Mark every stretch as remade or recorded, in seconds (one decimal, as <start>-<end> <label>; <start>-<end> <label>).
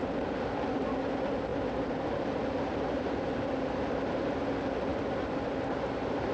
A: 0.0-0.8 remade; 0.8-1.5 recorded; 1.5-4.3 remade; 4.3-4.9 recorded; 4.9-6.3 remade